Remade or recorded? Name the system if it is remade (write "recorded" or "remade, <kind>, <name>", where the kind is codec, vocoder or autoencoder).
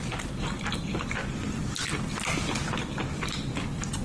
recorded